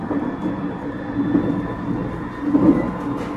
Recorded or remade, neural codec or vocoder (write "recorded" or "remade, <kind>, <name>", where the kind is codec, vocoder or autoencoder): recorded